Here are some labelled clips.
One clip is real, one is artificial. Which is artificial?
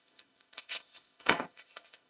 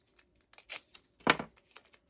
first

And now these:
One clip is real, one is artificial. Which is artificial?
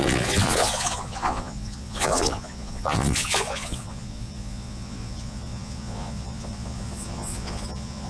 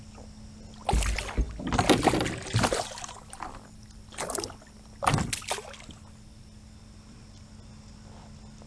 first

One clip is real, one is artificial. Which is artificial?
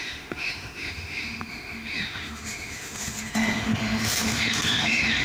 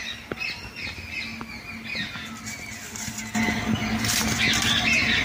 first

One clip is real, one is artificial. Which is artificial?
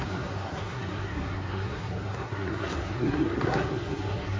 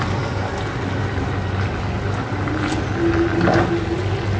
first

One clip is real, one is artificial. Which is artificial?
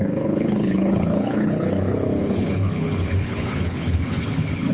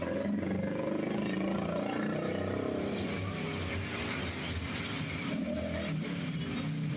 first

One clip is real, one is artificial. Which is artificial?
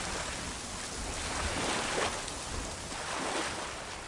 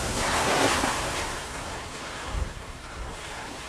second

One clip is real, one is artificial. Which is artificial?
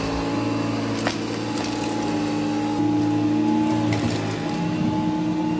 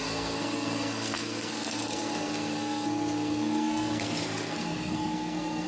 second